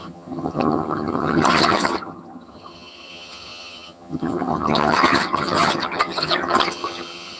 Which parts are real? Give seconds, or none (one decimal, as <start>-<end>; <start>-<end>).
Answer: none